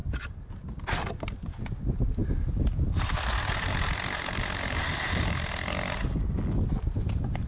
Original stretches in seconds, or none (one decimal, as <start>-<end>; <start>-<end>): 0.0-7.5